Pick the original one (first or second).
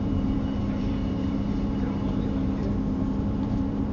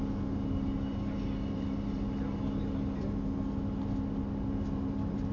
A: second